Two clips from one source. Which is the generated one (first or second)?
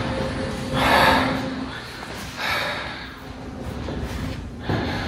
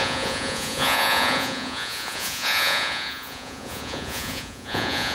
second